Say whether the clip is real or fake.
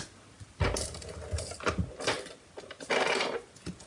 real